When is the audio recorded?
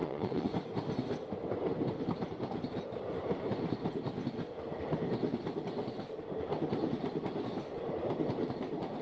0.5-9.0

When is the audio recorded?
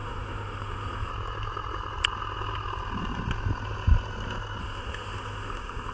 1.1-4.6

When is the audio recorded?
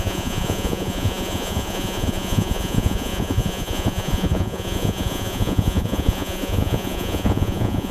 none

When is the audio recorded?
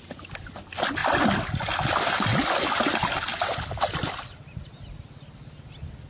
0.0-6.1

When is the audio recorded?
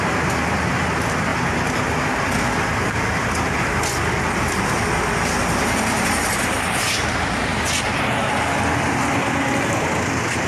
0.0-10.5